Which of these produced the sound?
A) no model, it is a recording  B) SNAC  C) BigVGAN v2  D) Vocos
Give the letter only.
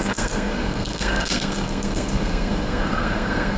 B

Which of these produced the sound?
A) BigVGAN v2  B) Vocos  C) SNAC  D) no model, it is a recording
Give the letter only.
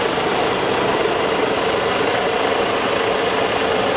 D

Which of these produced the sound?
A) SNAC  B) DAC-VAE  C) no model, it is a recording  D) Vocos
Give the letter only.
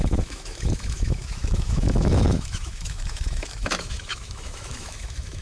B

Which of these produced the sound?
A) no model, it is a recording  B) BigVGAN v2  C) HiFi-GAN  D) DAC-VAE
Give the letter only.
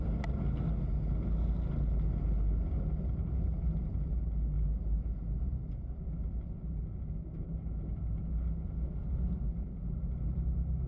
A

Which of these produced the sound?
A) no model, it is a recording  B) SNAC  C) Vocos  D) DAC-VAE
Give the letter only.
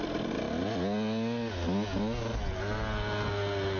A